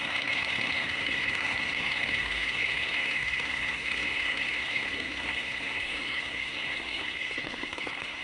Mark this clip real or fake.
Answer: fake